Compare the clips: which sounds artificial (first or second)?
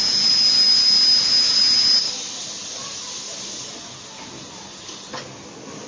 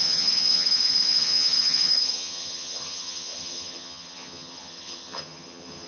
second